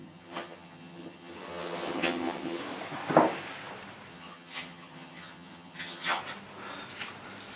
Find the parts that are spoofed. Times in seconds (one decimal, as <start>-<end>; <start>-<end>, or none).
0.0-2.6; 4.1-6.2